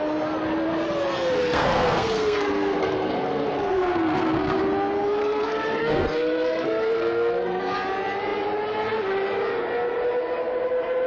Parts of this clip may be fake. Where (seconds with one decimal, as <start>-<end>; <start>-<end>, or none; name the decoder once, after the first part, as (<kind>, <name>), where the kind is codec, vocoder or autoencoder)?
1.4-4.6 (codec, SNAC); 5.2-7.6

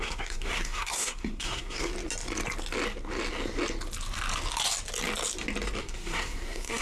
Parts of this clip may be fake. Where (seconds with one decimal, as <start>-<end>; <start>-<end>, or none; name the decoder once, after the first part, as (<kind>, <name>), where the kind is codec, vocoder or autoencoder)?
0.0-1.9 (codec, SNAC); 5.8-6.8

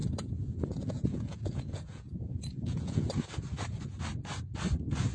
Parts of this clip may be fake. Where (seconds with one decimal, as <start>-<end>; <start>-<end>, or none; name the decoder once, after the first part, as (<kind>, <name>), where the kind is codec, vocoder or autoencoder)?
0.0-3.1 (vocoder, Vocos)

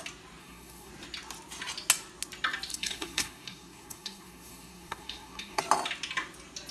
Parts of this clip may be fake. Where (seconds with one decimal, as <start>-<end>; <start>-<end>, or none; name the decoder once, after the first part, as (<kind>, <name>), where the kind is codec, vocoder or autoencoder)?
0.4-0.9 (codec, SNAC); 2.7-5.6